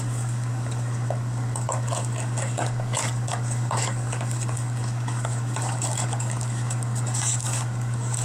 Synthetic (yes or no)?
yes